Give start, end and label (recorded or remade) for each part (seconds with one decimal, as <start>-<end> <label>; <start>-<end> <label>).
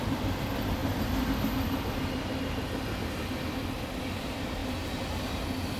0.0-0.8 remade; 0.8-4.0 recorded; 4.0-4.6 remade; 4.6-5.3 recorded; 5.3-5.8 remade